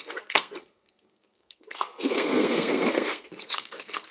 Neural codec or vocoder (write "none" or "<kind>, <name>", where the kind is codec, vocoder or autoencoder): codec, SNAC